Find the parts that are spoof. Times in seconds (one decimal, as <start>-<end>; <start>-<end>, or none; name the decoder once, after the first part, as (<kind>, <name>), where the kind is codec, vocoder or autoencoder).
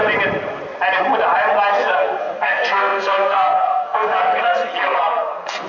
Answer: 1.7-5.7 (codec, SNAC)